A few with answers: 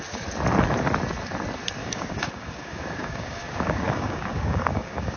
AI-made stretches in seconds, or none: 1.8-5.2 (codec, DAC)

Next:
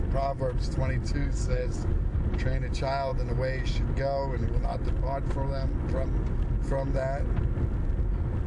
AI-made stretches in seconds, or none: 1.2-2.2 (codec, DAC)